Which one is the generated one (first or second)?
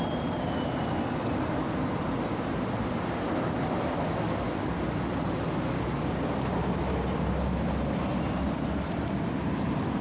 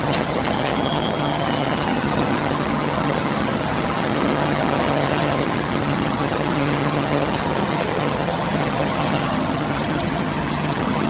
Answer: second